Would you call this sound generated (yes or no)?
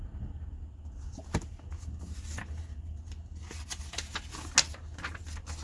no